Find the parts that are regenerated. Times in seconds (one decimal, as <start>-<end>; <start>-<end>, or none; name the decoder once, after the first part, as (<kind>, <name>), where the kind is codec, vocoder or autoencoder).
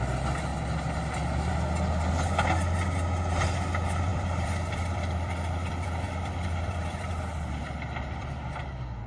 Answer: 0.5-1.5 (vocoder, BigVGAN v2); 4.1-8.3